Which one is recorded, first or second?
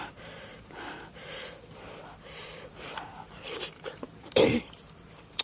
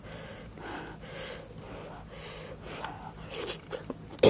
second